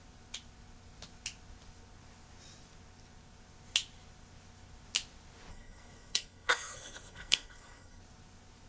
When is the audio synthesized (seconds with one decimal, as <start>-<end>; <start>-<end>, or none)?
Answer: 5.5-8.0